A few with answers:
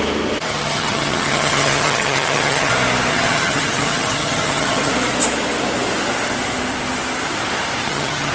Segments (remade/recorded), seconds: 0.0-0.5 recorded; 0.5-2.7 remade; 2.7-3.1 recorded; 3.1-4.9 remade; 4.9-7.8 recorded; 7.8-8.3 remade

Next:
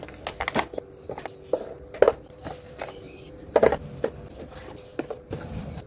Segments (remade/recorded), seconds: 0.0-2.4 recorded; 2.4-5.9 remade

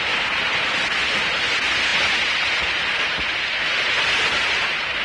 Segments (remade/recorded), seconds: 0.0-5.0 recorded

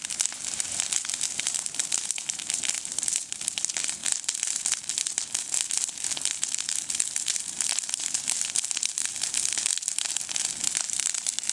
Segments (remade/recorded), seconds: 0.0-11.5 recorded